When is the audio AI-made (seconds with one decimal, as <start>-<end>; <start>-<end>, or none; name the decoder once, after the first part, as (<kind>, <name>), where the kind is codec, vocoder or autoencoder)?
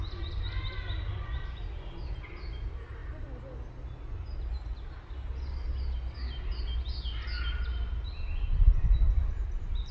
none